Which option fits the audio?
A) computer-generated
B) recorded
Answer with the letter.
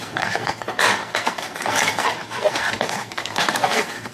A